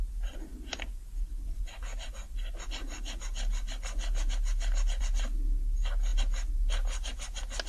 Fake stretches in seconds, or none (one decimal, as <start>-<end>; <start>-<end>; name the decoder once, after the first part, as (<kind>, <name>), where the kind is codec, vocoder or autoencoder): none